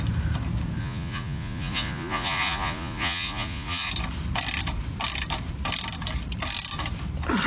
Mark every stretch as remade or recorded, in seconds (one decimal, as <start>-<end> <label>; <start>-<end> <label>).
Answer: 0.0-0.8 recorded; 0.8-3.9 remade; 3.9-7.5 recorded